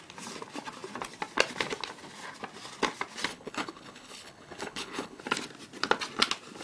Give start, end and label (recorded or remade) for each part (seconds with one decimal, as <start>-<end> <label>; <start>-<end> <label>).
0.0-3.3 recorded; 3.3-5.2 remade; 5.2-6.6 recorded